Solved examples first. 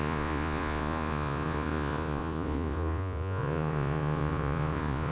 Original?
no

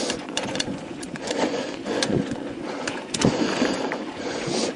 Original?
no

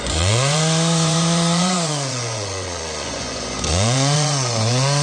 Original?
no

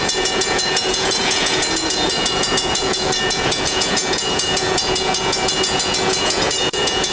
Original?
no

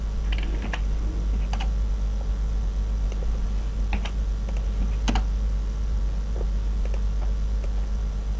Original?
yes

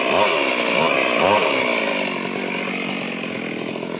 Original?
yes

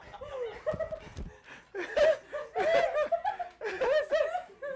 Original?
yes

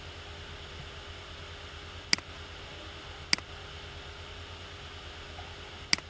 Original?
yes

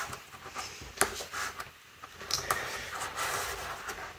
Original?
yes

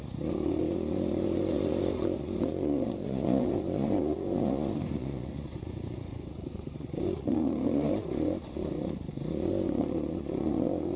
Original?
no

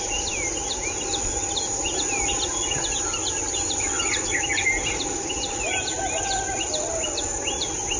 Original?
yes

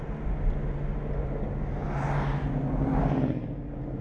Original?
yes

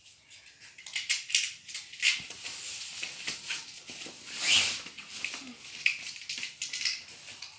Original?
yes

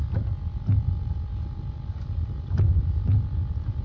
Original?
yes